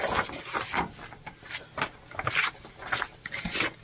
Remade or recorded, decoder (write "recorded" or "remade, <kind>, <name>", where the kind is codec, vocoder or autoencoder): recorded